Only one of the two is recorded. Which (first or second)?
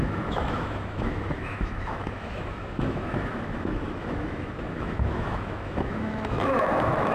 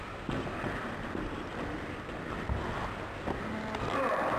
second